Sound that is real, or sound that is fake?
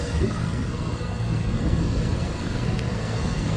fake